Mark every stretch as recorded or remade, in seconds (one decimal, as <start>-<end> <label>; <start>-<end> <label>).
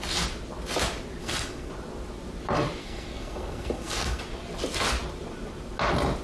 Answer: 0.0-1.2 recorded; 1.2-1.7 remade; 1.7-2.8 recorded; 2.8-4.2 remade; 4.2-6.2 recorded